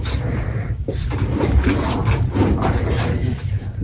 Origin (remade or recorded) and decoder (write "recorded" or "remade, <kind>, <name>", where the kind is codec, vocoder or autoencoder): remade, vocoder, BigVGAN v2